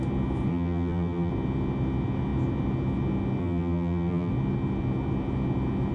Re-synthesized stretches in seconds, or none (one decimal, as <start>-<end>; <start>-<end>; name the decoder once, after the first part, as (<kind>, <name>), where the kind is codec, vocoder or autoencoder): 0.5-1.3 (vocoder, BigVGAN v2); 3.4-4.3